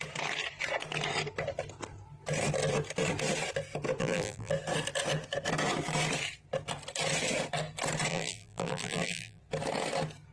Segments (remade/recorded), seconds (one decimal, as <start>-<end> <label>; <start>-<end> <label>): 0.0-4.0 recorded; 4.0-4.5 remade; 4.5-8.1 recorded; 8.1-9.4 remade; 9.4-10.3 recorded